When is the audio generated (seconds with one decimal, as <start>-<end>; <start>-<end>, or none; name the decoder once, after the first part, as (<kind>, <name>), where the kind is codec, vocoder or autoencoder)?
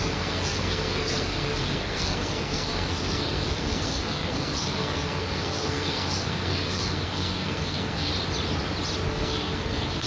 0.0-8.1 (codec, SNAC); 9.1-10.1